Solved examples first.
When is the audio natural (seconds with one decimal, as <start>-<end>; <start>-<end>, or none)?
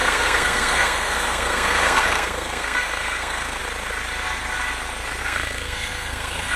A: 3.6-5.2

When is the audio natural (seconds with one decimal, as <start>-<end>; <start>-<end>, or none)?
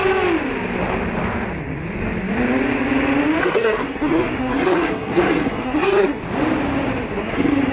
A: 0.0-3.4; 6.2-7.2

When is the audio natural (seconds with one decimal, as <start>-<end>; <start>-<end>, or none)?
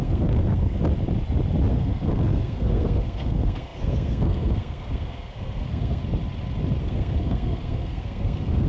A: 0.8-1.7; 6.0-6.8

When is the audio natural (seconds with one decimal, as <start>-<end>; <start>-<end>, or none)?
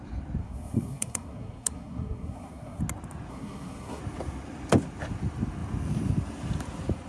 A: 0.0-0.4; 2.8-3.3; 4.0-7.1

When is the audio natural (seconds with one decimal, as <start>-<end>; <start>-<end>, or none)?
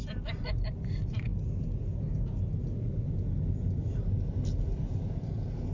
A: 0.0-5.7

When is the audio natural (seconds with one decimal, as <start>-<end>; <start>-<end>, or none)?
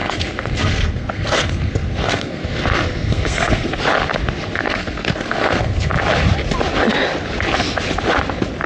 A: 3.8-4.6; 5.9-8.7